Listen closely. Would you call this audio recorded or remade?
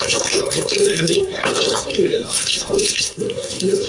remade